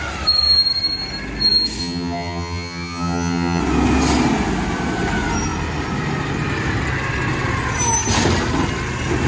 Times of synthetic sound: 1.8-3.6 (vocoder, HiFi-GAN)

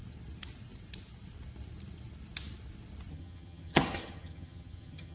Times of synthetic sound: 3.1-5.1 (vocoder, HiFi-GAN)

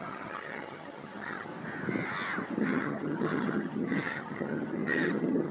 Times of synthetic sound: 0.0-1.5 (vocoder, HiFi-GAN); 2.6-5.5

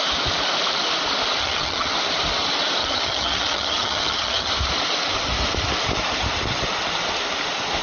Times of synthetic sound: 1.4-1.9 (vocoder, HiFi-GAN); 2.8-4.5